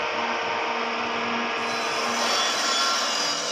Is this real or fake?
real